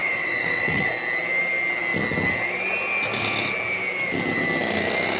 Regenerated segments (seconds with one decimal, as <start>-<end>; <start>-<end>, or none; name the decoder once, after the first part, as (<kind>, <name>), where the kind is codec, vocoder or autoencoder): 0.0-0.9 (vocoder, WaveNeXt)